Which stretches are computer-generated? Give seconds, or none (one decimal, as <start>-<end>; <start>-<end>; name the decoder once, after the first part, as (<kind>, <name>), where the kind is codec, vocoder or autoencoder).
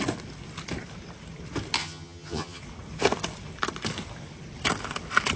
1.8-2.6 (vocoder, HiFi-GAN)